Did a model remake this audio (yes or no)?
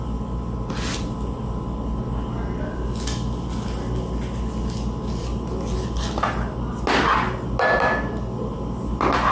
no